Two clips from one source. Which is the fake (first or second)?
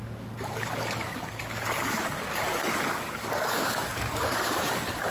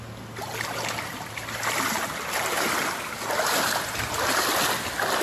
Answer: first